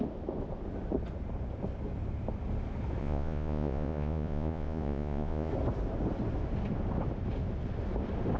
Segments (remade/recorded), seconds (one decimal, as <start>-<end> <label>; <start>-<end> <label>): 0.0-3.0 recorded; 3.0-5.5 remade; 5.5-8.4 recorded